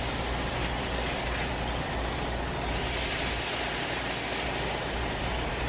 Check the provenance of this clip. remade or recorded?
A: recorded